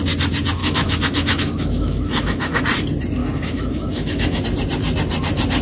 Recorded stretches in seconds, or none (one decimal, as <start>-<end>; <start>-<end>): 0.0-0.6; 2.6-3.2; 4.4-5.6